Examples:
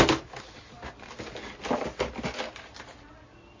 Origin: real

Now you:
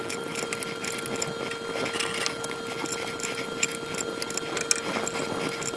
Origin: real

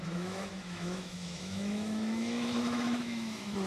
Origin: fake